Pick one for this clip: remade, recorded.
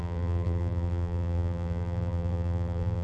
remade